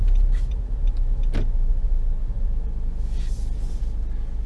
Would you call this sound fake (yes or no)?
no